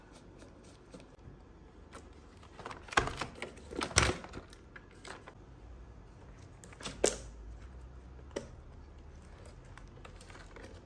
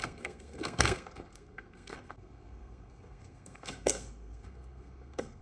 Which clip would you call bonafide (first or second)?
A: first